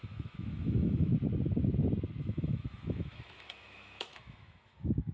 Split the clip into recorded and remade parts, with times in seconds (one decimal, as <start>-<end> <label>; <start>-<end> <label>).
0.0-1.1 remade; 1.1-2.2 recorded; 2.2-5.1 remade